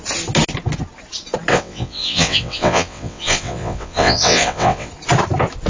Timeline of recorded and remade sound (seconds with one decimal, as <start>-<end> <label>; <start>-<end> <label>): 0.0-1.5 recorded; 1.5-4.9 remade; 4.9-5.7 recorded